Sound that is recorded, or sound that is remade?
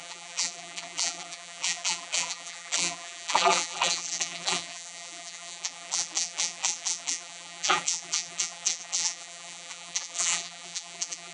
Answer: remade